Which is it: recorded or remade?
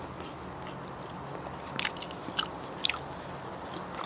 recorded